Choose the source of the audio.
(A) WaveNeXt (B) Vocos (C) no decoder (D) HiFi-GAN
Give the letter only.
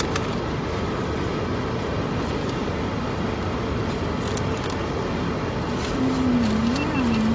C